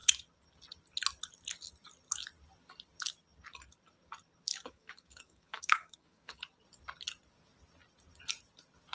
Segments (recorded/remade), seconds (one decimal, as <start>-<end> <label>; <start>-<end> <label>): 0.0-4.5 recorded; 4.5-6.4 remade; 6.4-8.9 recorded